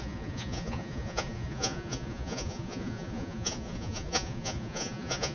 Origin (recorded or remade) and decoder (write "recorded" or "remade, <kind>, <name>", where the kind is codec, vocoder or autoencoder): remade, vocoder, Vocos